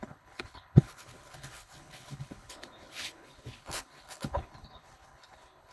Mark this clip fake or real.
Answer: fake